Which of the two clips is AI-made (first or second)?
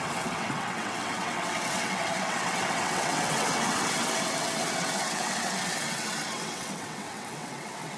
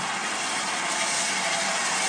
first